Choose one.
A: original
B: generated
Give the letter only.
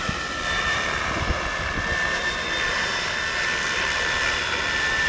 B